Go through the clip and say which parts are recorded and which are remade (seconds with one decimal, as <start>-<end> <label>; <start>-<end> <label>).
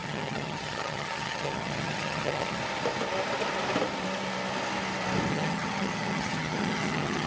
0.0-2.6 remade; 2.6-5.3 recorded; 5.3-7.3 remade